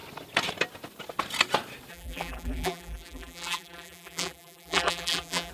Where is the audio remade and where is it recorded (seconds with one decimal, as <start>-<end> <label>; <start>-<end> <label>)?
0.0-1.9 recorded; 1.9-5.5 remade